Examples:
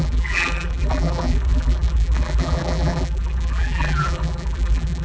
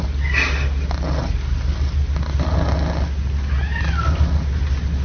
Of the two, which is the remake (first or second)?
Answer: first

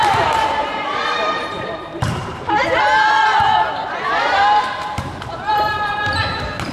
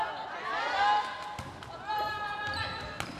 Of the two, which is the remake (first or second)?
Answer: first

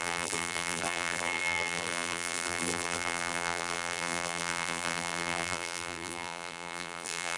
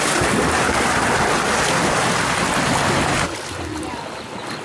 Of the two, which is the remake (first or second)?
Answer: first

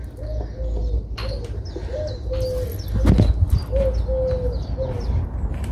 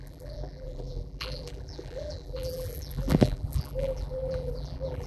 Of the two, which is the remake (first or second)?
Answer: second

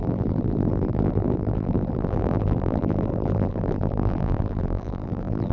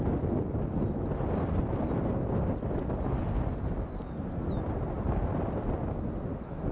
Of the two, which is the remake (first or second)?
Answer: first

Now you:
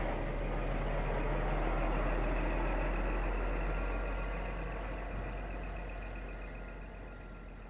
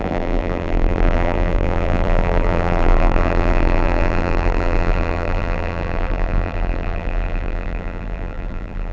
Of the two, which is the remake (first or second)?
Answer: second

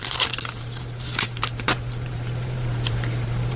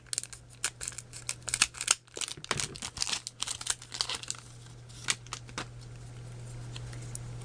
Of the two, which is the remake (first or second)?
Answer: first